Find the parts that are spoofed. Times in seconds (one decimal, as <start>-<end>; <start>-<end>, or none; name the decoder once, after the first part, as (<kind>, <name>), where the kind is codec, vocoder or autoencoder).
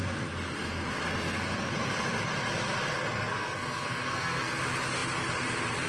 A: 3.0-4.6 (codec, SNAC)